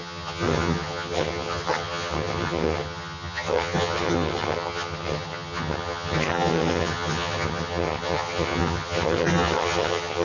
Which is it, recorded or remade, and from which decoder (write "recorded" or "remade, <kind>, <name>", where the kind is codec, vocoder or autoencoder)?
remade, vocoder, HiFi-GAN